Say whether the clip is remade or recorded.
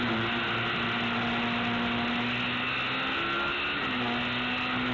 recorded